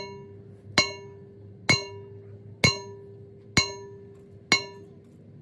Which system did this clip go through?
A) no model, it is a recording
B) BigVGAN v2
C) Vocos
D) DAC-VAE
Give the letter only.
A